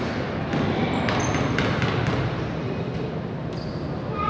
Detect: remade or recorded recorded